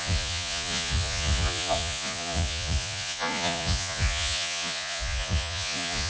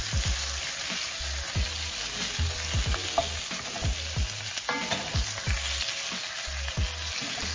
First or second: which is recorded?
second